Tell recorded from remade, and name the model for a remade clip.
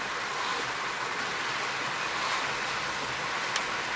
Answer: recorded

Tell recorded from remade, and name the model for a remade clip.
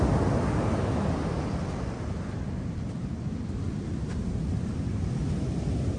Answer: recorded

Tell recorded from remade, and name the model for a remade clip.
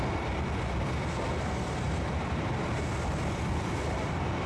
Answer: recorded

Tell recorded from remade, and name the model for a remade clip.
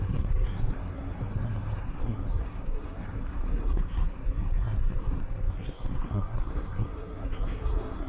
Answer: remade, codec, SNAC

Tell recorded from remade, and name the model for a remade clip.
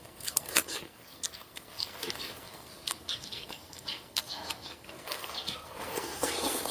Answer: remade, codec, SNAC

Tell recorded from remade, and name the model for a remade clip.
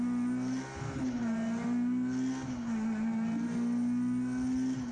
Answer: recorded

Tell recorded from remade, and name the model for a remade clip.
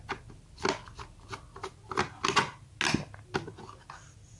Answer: recorded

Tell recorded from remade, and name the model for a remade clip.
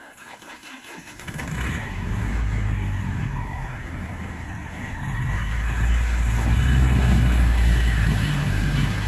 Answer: remade, codec, SNAC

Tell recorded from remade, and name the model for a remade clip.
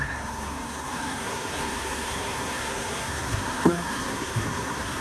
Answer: remade, codec, SNAC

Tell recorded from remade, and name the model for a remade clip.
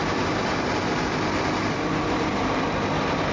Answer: recorded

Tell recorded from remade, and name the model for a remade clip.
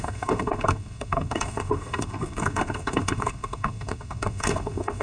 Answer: remade, codec, SNAC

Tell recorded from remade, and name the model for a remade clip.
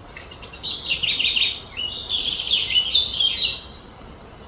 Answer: recorded